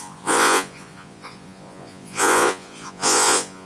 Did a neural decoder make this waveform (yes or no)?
yes